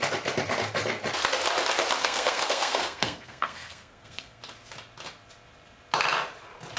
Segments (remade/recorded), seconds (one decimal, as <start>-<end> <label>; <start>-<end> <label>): 0.0-2.0 recorded; 2.0-4.4 remade; 4.4-6.8 recorded